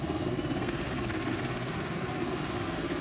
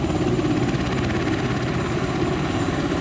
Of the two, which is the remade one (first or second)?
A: first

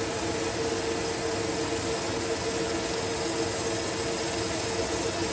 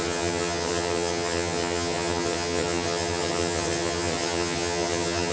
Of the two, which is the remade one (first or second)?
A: second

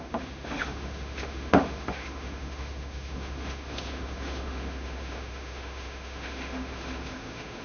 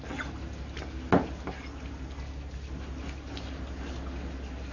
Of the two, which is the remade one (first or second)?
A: first